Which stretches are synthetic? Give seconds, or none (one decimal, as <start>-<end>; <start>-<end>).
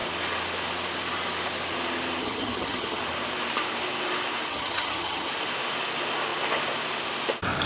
2.2-3.0; 4.5-5.3